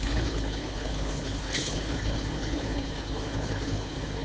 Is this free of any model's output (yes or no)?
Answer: no